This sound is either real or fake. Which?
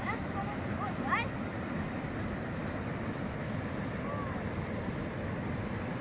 real